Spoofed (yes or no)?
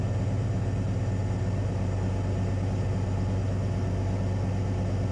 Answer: no